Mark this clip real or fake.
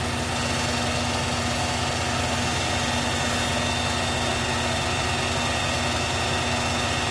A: real